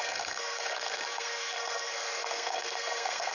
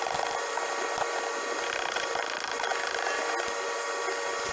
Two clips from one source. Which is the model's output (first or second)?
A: first